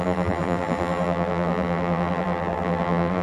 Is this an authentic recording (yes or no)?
no